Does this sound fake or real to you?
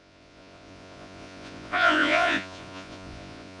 fake